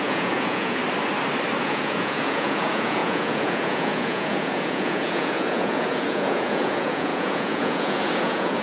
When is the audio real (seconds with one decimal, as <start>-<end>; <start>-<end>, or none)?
0.8-1.6